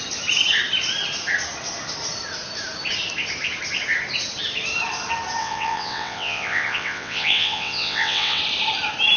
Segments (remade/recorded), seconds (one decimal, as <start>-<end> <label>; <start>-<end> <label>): 0.0-5.4 recorded; 5.4-8.4 remade; 8.4-9.2 recorded